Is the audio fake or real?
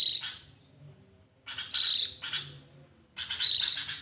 real